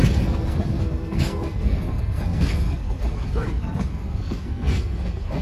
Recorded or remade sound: remade